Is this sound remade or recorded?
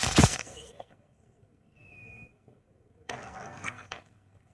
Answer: remade